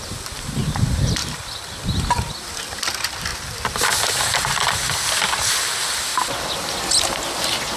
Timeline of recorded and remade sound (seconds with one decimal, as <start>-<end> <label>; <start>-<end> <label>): 0.0-3.3 remade; 3.3-5.5 recorded; 5.5-6.1 remade; 6.1-7.8 recorded